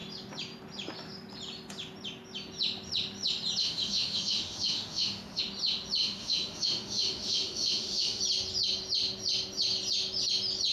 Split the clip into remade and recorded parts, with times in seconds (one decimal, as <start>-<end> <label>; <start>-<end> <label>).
0.0-3.6 recorded; 3.6-5.4 remade; 5.4-6.0 recorded; 6.0-8.2 remade; 8.2-10.7 recorded